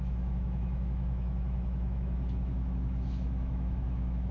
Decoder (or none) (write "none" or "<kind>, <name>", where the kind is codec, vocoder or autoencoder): autoencoder, DAC-VAE